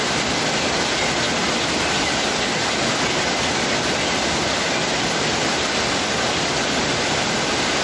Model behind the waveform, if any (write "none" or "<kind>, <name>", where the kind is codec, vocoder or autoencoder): none